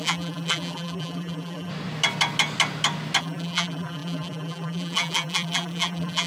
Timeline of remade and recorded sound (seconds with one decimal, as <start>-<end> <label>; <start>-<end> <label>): 0.0-1.7 remade; 1.7-3.2 recorded; 3.2-6.3 remade